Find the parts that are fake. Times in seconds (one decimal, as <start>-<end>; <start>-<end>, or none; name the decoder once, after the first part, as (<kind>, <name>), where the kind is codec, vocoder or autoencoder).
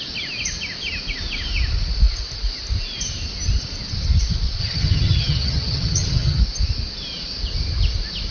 4.6-6.4 (vocoder, HiFi-GAN)